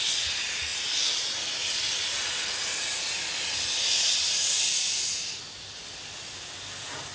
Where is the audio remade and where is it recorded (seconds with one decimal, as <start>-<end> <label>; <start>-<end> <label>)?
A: 0.0-7.1 recorded